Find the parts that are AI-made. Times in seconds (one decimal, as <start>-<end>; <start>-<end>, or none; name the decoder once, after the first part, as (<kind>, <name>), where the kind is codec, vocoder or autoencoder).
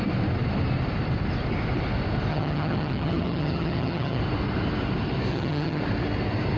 2.3-4.2 (vocoder, HiFi-GAN); 5.3-5.8